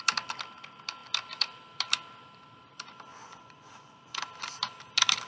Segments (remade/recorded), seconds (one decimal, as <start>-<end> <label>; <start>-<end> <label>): 0.0-3.1 recorded; 3.1-4.1 remade; 4.1-5.3 recorded